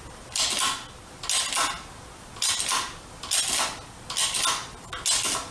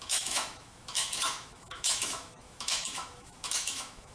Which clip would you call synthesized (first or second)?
second